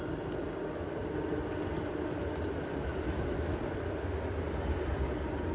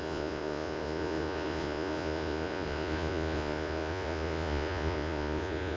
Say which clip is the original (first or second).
first